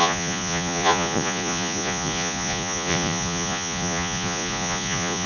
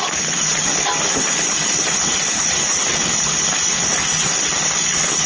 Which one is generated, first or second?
first